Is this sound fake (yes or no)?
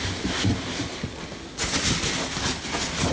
no